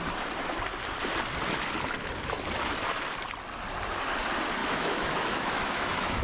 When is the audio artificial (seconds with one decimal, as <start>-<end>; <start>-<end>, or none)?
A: 4.6-6.2